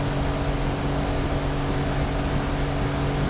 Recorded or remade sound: recorded